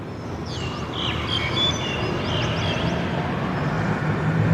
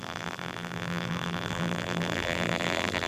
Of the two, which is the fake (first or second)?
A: second